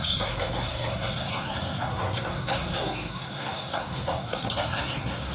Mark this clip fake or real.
fake